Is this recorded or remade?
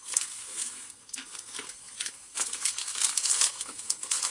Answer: remade